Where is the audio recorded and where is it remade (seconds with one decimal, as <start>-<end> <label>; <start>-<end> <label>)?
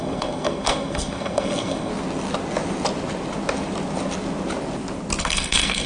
0.0-1.9 remade; 1.9-5.2 recorded; 5.2-5.9 remade